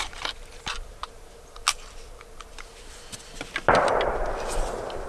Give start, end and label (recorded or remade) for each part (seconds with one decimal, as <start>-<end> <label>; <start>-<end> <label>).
0.0-5.1 recorded